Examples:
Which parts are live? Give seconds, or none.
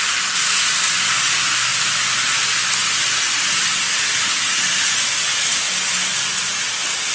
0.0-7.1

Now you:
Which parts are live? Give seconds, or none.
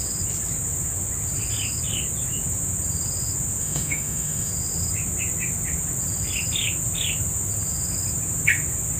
0.0-3.6; 4.5-9.0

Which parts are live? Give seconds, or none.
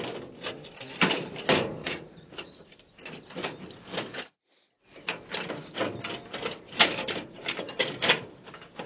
0.0-1.8; 2.6-8.9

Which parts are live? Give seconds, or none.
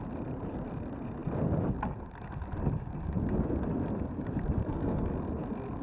0.0-4.6; 5.1-5.8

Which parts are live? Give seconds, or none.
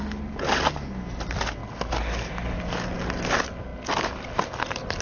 0.0-5.0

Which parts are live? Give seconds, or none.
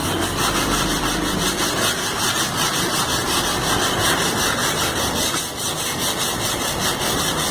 1.0-4.6; 6.0-7.5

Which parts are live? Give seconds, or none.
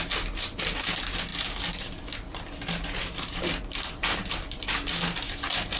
0.0-3.0; 3.6-5.8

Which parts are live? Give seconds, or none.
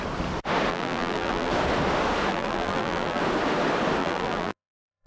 0.0-0.7; 1.5-2.3; 3.2-4.0